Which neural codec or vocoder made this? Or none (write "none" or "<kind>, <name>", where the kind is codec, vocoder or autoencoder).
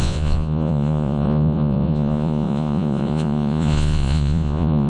vocoder, Vocos